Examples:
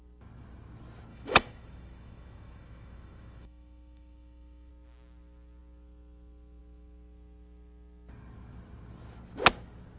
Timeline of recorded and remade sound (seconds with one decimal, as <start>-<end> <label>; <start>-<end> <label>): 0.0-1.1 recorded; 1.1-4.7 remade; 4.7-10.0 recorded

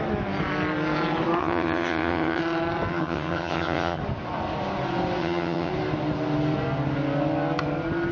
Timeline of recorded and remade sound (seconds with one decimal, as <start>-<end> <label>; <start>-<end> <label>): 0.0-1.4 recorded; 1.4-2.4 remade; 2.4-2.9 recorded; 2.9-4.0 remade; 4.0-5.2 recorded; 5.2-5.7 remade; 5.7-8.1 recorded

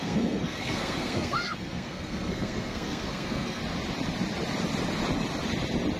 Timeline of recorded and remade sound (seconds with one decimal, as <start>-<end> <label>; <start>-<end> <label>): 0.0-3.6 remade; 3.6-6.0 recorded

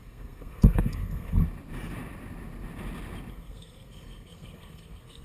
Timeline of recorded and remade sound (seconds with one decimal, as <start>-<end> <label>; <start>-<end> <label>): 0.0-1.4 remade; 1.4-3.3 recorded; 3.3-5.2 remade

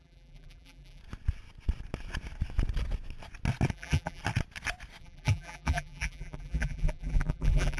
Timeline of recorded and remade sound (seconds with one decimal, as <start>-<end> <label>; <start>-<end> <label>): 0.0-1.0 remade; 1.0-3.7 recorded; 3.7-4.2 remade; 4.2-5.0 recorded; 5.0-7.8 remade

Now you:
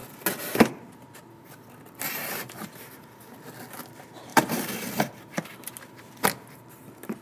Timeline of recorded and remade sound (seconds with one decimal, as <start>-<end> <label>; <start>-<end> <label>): 0.0-4.3 recorded; 4.3-5.7 remade; 5.7-7.2 recorded